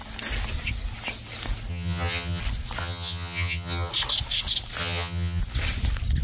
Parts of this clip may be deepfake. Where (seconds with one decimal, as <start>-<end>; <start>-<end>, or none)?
1.7-2.4; 2.8-3.9; 4.8-5.4